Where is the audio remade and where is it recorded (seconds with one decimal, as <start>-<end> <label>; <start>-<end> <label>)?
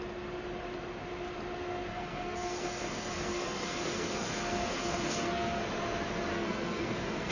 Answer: 0.0-1.9 recorded; 1.9-5.6 remade; 5.6-6.3 recorded; 6.3-7.3 remade